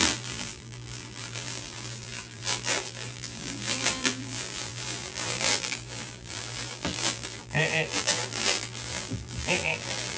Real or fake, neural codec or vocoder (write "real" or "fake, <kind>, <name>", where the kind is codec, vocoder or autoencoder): fake, vocoder, BigVGAN v2